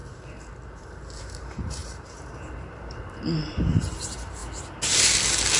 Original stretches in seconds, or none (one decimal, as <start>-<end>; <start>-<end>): 0.0-1.2; 4.4-5.6